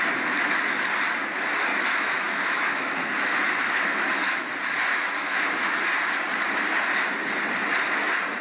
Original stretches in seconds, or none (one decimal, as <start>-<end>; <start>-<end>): 0.0-1.7; 4.5-4.9; 5.8-8.4